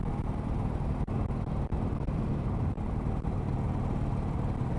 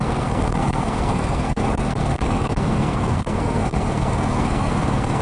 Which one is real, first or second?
first